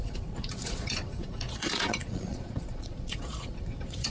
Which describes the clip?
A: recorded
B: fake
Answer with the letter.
B